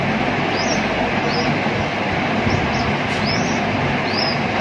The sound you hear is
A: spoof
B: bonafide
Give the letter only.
B